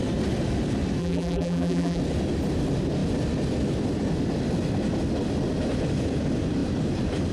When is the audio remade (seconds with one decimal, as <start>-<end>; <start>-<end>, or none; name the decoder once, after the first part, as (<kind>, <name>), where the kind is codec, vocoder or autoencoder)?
1.0-2.0 (vocoder, BigVGAN v2)